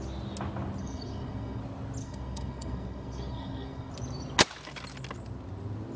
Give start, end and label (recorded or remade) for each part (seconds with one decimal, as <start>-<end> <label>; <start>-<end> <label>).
0.0-0.8 recorded; 0.8-1.6 remade; 1.6-2.0 recorded; 2.0-3.9 remade; 3.9-6.0 recorded